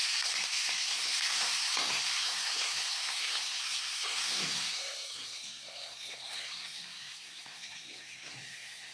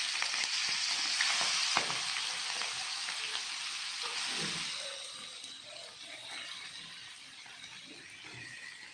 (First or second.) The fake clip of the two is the first